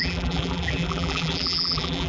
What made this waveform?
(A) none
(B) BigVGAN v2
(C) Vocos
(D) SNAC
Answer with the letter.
B